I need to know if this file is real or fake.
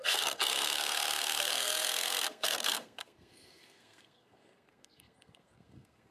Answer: fake